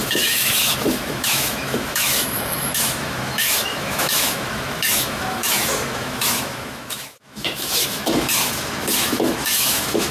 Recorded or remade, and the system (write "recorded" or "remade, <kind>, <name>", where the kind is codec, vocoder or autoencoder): remade, autoencoder, DAC-VAE